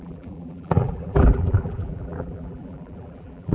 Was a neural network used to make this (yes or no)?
yes